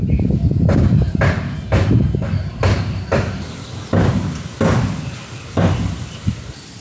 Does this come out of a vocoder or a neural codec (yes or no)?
no